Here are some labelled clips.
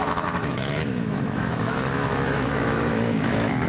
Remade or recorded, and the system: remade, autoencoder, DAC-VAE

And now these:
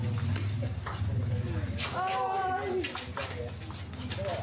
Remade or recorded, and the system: recorded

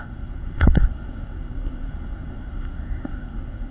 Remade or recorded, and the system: remade, codec, SNAC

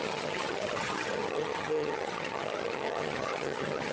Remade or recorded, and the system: remade, vocoder, HiFi-GAN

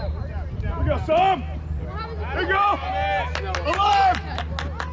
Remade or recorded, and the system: recorded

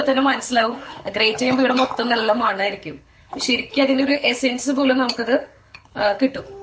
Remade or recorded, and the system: remade, codec, HILCodec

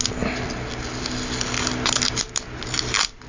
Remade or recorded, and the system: recorded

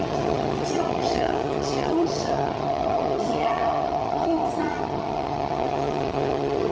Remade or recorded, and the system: remade, vocoder, HiFi-GAN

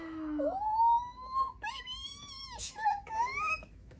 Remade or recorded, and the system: remade, autoencoder, DAC-VAE